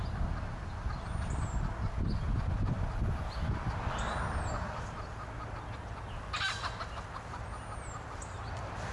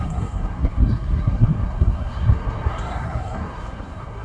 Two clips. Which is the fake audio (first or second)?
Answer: second